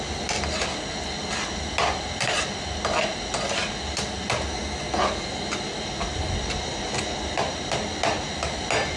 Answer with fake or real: real